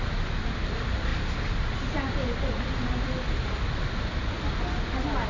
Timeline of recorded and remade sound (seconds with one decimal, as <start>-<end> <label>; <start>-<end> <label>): 0.0-5.3 recorded